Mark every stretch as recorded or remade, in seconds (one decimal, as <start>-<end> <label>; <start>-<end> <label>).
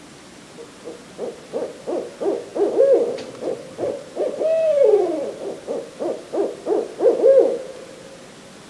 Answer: 0.0-8.7 recorded